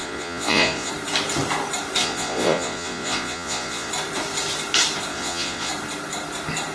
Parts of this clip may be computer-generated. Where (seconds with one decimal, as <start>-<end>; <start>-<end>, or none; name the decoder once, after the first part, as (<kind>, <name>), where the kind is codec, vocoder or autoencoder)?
0.0-0.9 (vocoder, Vocos); 2.0-3.9; 5.1-5.7